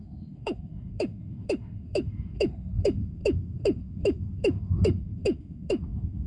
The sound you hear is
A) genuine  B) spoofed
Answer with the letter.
B